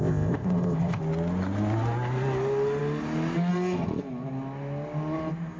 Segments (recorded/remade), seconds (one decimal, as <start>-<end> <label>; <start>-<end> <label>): 0.0-1.0 remade; 1.0-5.6 recorded